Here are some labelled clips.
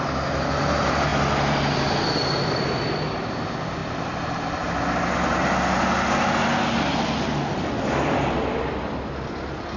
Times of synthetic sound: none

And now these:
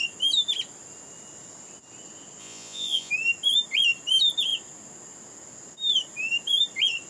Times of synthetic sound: 2.4-3.1 (vocoder, Vocos)